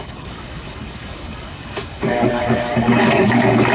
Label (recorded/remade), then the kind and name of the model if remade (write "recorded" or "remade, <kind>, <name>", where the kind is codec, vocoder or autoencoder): remade, codec, DAC